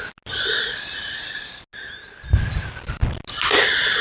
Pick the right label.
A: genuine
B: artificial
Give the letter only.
A